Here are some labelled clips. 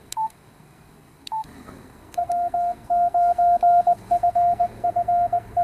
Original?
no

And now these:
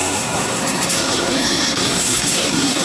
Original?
no